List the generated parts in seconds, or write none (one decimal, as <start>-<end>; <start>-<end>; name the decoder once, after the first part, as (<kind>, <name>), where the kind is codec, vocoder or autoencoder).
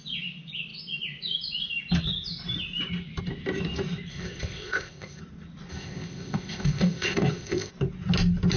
4.1-5.2 (codec, ZipCodec); 5.7-7.7